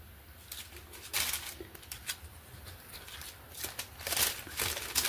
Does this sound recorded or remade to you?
recorded